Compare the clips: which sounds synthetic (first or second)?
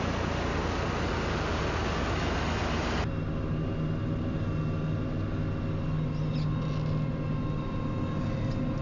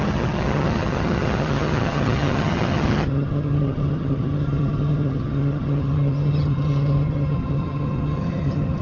second